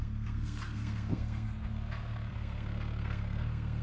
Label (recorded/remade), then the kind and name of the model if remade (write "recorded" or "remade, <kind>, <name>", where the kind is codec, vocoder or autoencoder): remade, codec, SNAC